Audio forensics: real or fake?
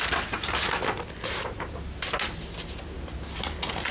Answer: real